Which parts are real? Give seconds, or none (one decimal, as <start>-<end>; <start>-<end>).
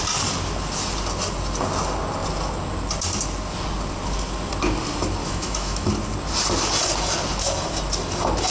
0.0-5.2; 5.9-8.5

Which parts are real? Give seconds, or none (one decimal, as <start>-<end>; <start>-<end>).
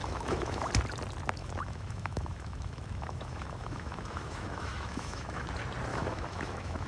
0.7-1.4; 5.5-5.9